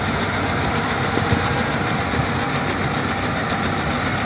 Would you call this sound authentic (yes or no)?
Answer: no